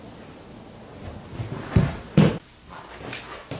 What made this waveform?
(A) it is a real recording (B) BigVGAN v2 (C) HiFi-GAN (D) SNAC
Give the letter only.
A